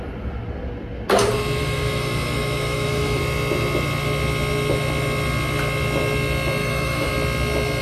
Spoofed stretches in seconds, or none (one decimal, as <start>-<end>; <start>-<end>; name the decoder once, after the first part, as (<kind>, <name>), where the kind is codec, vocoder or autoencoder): 1.6-3.2 (autoencoder, DAC-VAE); 6.6-7.1